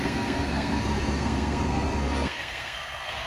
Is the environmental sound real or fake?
fake